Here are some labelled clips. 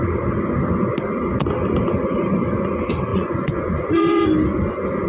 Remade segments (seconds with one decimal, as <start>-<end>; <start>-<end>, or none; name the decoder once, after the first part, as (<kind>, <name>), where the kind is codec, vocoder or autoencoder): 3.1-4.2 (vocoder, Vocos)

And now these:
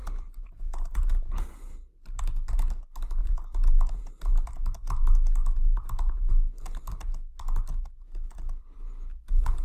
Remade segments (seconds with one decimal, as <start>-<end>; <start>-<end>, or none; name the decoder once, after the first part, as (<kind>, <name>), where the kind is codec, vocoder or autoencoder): 0.0-2.2 (vocoder, BigVGAN v2); 3.2-4.5; 5.4-6.3

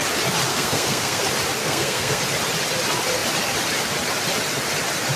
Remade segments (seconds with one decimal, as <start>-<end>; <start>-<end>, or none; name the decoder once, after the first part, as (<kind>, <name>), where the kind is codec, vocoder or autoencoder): 0.5-1.2 (codec, SNAC); 1.6-2.2

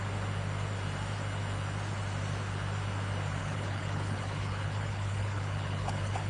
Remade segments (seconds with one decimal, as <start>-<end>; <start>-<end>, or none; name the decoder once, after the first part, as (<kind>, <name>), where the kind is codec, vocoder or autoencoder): 3.4-6.3 (codec, HILCodec)

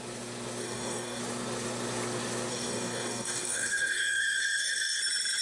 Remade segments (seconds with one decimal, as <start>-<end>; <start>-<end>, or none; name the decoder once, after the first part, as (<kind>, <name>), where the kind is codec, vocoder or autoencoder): 0.6-1.2 (codec, DAC); 2.5-5.0